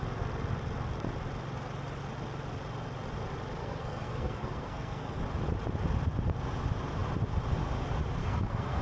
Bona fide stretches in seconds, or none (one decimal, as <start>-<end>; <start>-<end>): 0.0-3.6; 5.2-8.2